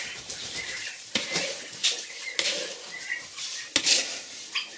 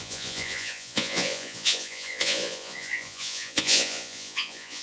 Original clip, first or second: first